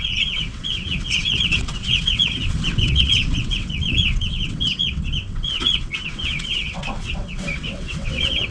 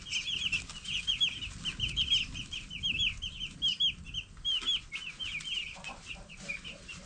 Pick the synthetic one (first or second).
first